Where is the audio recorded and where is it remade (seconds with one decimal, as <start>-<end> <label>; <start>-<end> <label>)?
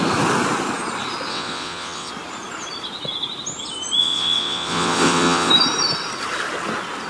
0.0-1.3 recorded; 1.3-2.1 remade; 2.1-4.0 recorded; 4.0-5.5 remade; 5.5-7.1 recorded